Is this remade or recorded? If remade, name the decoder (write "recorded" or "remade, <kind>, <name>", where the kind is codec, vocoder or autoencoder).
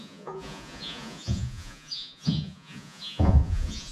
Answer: remade, vocoder, Vocos